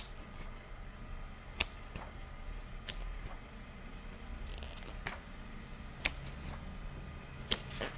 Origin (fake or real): real